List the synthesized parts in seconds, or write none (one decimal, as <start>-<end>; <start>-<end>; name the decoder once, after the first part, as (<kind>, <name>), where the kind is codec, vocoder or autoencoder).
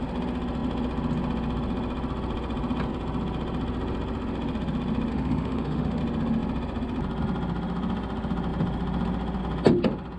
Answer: 5.1-6.0 (autoencoder, DAC-VAE)